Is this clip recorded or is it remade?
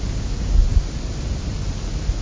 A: recorded